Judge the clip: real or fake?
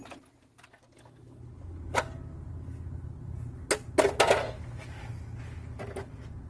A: real